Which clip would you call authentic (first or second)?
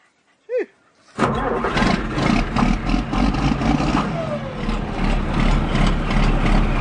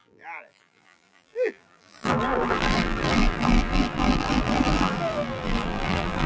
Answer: first